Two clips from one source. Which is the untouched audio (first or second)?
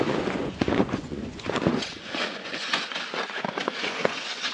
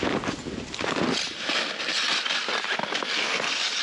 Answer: second